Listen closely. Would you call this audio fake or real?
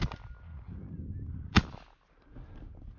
real